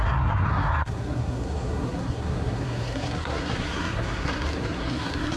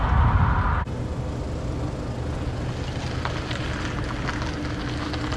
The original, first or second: second